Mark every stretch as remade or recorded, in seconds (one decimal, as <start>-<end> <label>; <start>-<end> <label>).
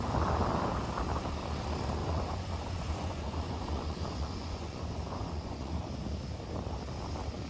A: 0.0-2.0 recorded; 2.0-5.7 remade; 5.7-7.5 recorded